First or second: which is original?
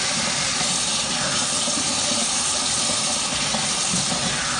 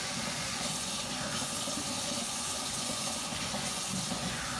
first